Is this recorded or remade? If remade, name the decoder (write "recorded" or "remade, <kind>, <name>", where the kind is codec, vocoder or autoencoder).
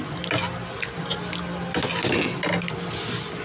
recorded